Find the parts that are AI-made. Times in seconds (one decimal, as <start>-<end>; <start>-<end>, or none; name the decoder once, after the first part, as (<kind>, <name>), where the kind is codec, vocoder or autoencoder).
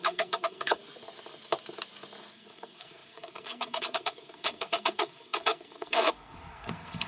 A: 0.0-0.8 (codec, SNAC); 2.3-7.1